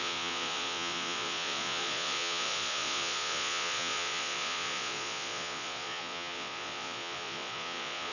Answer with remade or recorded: remade